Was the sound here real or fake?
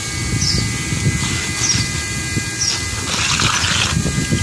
real